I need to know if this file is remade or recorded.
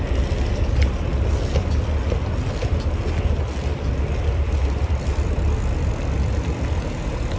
recorded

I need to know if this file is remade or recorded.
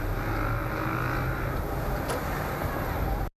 recorded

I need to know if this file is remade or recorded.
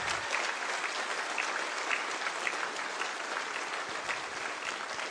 recorded